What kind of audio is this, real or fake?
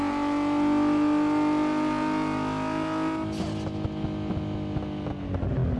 real